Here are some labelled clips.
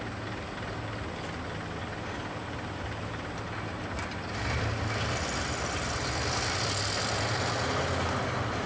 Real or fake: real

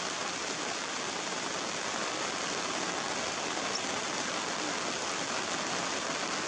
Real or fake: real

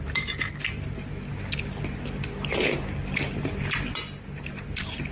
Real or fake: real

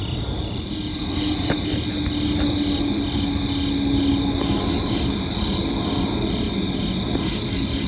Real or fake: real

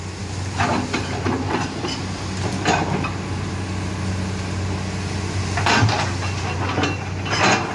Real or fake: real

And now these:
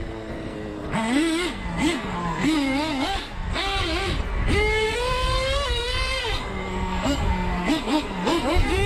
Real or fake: fake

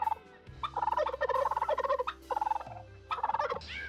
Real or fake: real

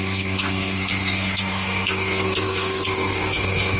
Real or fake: fake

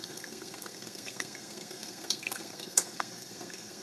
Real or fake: fake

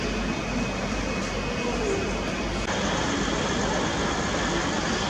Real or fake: real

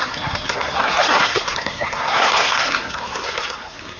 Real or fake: fake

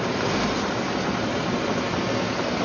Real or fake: real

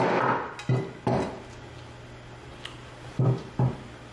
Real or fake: real